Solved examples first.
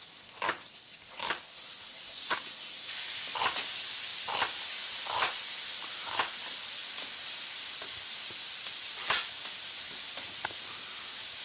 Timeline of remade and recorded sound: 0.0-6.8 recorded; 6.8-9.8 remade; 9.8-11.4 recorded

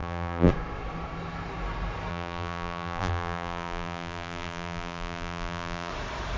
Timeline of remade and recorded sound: 0.0-0.5 remade; 0.5-2.1 recorded; 2.1-5.9 remade; 5.9-6.4 recorded

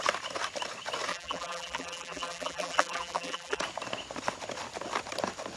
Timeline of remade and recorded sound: 0.0-1.1 recorded; 1.1-3.6 remade; 3.6-5.6 recorded

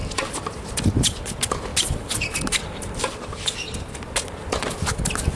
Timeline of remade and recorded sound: 0.0-5.4 recorded

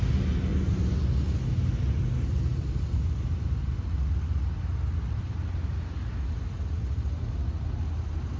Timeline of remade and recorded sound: 0.0-8.4 recorded